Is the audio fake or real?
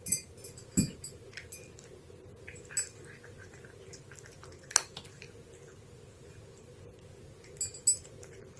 real